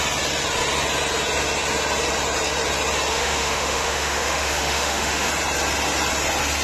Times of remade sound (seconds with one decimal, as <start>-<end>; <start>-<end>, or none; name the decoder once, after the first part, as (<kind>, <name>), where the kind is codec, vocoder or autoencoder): 3.1-5.3 (autoencoder, DAC-VAE)